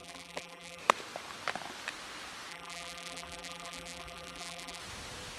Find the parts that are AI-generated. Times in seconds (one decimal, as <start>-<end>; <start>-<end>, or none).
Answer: 0.0-0.8; 2.5-4.8